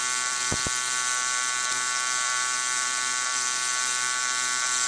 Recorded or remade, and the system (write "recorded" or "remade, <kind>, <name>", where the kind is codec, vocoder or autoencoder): remade, vocoder, BigVGAN v2